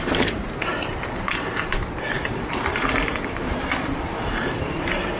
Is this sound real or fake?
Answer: fake